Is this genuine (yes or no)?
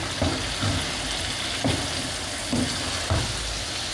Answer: yes